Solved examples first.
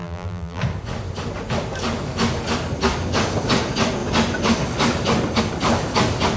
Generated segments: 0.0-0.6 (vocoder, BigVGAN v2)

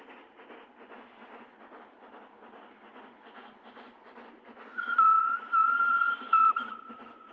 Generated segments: 2.9-7.3 (vocoder, Vocos)

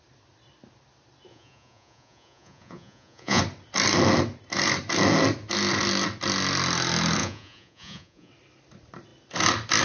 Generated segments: 1.3-3.4 (vocoder, Vocos); 7.2-8.3

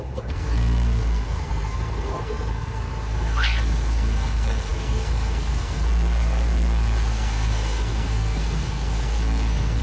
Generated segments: 0.0-9.8 (codec, SNAC)

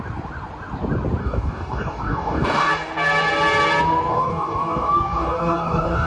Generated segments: 1.2-2.7 (codec, DAC); 4.1-6.1

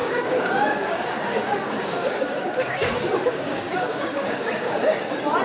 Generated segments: 0.0-2.9 (codec, DAC); 3.3-5.0

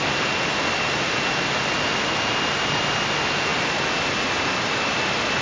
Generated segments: none